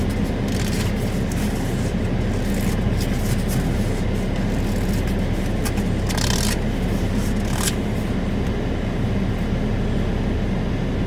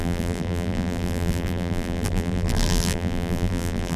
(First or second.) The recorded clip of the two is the first